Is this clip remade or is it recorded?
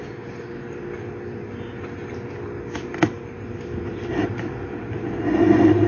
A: recorded